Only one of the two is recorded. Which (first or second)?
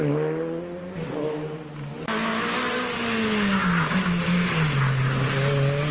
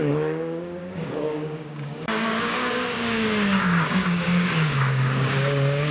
first